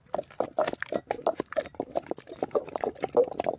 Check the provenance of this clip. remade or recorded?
recorded